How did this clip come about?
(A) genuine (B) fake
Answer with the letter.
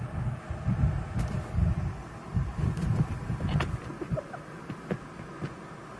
A